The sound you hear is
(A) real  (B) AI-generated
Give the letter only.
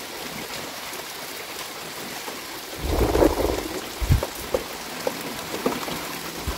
A